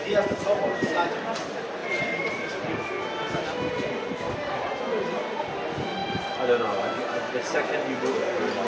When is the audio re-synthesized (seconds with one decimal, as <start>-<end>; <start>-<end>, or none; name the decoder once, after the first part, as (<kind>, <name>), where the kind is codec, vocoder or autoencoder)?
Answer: none